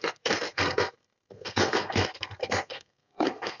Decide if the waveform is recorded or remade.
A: remade